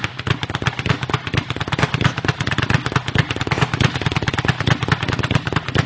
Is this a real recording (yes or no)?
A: yes